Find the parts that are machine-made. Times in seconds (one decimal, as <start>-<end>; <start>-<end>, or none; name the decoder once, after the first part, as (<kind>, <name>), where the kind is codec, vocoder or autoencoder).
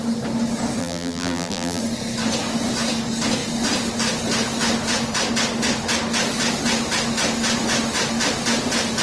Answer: 0.8-1.8 (vocoder, BigVGAN v2)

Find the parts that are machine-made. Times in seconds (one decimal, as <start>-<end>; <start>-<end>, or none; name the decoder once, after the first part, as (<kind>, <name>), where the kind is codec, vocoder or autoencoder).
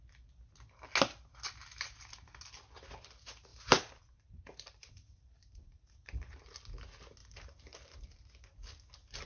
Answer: 3.5-6.5 (vocoder, BigVGAN v2); 7.2-8.0